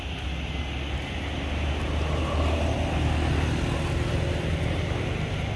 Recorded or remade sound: recorded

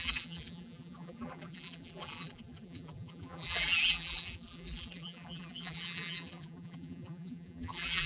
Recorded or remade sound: remade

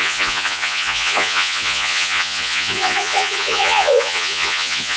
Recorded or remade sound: remade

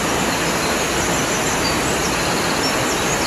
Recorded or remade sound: recorded